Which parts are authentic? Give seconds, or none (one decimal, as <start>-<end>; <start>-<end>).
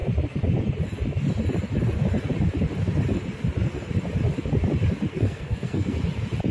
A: 0.0-5.1; 6.0-6.5